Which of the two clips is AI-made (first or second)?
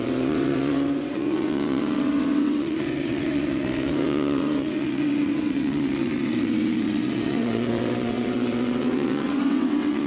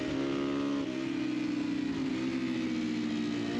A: first